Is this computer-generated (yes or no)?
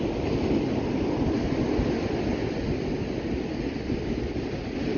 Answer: no